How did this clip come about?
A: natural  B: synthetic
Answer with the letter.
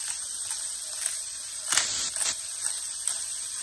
A